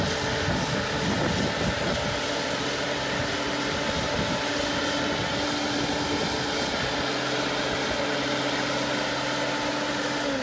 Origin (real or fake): real